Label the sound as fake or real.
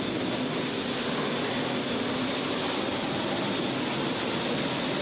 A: real